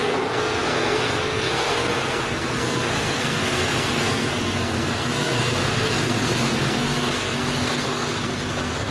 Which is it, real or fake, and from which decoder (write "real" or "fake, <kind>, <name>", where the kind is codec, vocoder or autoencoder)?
fake, codec, SNAC